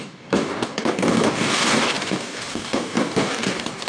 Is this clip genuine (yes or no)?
no